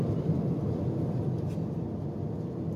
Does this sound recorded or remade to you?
recorded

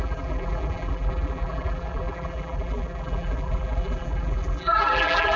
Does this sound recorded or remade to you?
remade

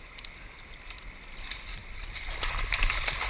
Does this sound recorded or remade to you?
recorded